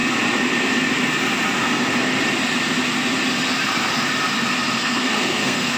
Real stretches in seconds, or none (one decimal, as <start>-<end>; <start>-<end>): 0.0-4.8